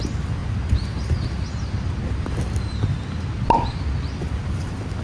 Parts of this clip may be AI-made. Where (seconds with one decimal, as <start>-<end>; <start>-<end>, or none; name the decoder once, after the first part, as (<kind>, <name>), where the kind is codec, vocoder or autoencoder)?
none